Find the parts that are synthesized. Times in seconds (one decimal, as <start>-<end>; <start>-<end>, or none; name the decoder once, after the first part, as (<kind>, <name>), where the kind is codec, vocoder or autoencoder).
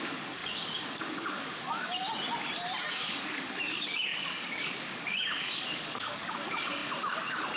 0.0-2.0 (codec, DAC); 3.0-7.6